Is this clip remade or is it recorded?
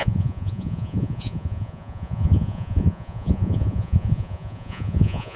remade